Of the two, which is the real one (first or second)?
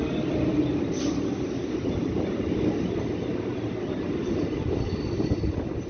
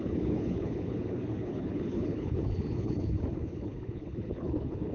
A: first